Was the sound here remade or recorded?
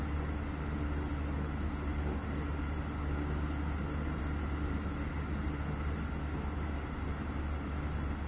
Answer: recorded